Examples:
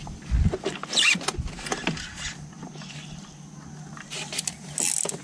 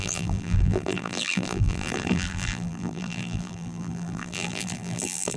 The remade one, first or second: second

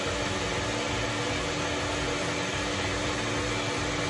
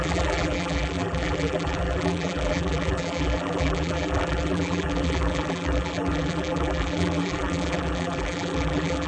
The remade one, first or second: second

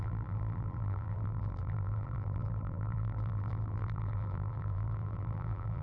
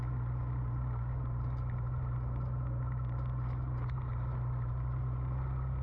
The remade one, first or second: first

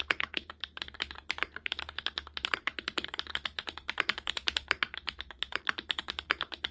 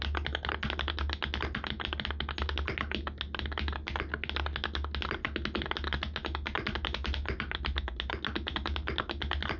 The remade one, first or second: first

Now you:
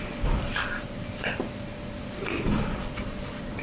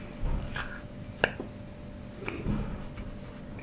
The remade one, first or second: first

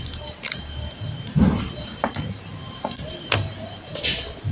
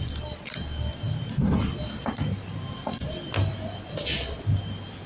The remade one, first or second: first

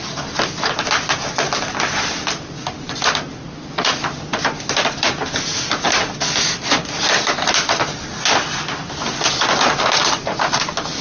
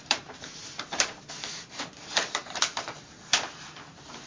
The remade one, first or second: second